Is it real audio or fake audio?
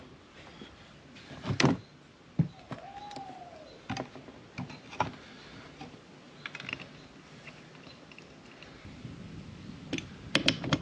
real